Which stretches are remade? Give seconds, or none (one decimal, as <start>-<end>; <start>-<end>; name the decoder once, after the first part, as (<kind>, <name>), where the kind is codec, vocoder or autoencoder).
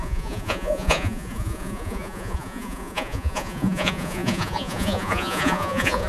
0.0-6.1 (vocoder, Vocos)